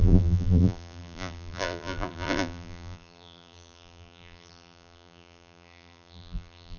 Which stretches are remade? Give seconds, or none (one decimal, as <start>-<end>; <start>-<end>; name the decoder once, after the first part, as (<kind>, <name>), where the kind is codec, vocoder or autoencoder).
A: 0.0-6.8 (vocoder, BigVGAN v2)